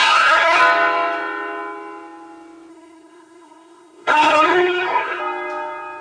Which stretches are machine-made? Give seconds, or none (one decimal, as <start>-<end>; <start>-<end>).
0.0-0.6; 2.7-5.2